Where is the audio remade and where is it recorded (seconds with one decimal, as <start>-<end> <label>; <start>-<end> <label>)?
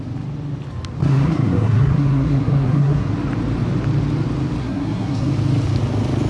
0.0-1.0 recorded; 1.0-3.1 remade; 3.1-4.6 recorded; 4.6-5.3 remade; 5.3-6.3 recorded